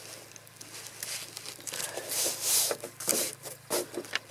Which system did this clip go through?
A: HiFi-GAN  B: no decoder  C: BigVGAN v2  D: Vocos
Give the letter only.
C